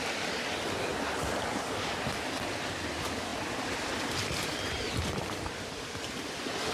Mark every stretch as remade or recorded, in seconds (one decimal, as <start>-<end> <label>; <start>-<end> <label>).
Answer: 0.0-6.7 recorded